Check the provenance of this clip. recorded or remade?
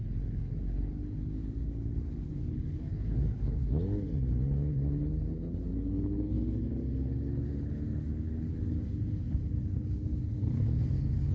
remade